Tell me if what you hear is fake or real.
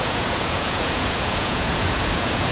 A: fake